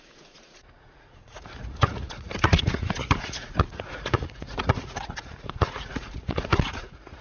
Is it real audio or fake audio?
fake